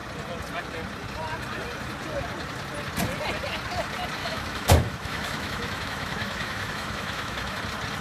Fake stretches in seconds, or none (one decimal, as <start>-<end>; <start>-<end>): 4.2-7.6